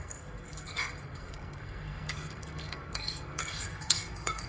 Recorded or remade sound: remade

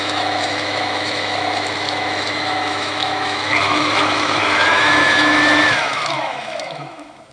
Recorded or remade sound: remade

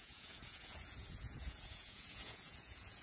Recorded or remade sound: remade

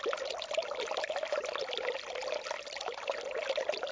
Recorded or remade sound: recorded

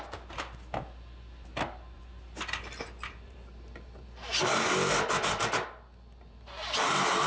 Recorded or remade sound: recorded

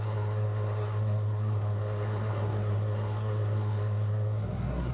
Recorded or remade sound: remade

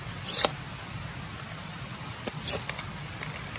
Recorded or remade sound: recorded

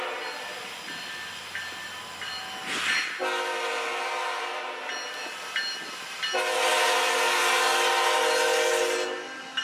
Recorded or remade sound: recorded